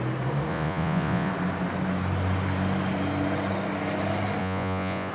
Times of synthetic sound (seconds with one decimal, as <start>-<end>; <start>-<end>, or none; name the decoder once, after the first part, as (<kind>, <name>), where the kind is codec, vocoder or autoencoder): 0.5-1.3 (vocoder, Vocos); 4.4-5.1